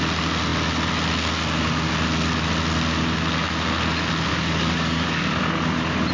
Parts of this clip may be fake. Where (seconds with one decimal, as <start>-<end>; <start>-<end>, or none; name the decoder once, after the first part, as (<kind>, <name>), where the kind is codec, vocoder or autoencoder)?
4.3-5.3 (codec, DAC)